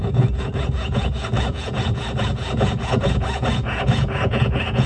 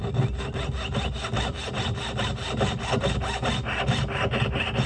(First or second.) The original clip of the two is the second